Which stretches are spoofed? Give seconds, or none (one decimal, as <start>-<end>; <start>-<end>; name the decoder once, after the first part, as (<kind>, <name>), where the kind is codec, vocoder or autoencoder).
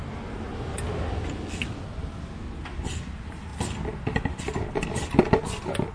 none